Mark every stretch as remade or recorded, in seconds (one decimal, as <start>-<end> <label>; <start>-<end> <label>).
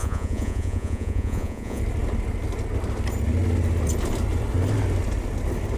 0.0-1.8 remade; 1.8-5.8 recorded